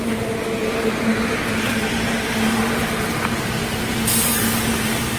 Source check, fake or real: fake